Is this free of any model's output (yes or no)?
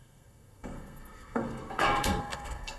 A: no